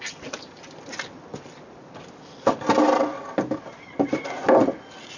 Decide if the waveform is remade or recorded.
recorded